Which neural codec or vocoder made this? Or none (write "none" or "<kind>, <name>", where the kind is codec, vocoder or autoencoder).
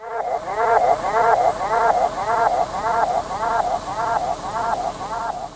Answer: none